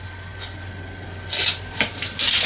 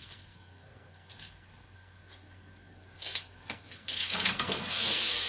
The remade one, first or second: second